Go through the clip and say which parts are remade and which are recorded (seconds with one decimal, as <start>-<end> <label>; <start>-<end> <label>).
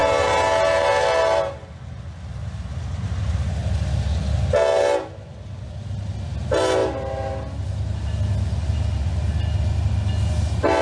0.0-10.8 recorded